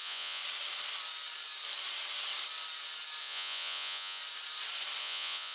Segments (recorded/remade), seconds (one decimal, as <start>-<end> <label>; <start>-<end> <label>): 0.0-0.4 remade; 0.4-3.2 recorded; 3.2-4.2 remade; 4.2-5.0 recorded; 5.0-5.5 remade